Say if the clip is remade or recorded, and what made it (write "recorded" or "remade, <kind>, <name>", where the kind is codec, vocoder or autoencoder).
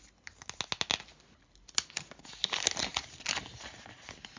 recorded